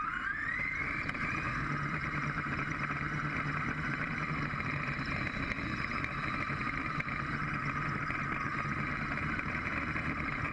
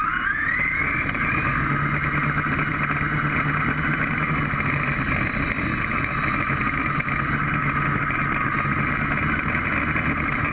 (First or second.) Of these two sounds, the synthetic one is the first